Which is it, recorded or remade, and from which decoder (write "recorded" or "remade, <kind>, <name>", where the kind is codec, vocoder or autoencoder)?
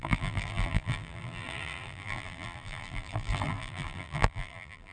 remade, vocoder, BigVGAN v2